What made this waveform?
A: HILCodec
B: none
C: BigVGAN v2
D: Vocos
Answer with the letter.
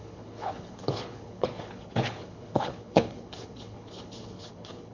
A